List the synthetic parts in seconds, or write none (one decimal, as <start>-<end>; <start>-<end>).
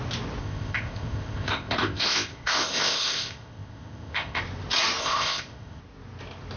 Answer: 0.4-4.4; 5.0-5.8